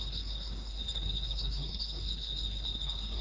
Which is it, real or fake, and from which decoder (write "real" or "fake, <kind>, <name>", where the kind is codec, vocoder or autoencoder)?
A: fake, codec, SNAC